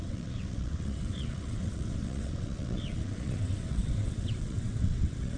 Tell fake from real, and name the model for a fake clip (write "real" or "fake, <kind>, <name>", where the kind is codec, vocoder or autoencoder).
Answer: fake, vocoder, WaveNeXt